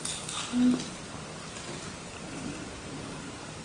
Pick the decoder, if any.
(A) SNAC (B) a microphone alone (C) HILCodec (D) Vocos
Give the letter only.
B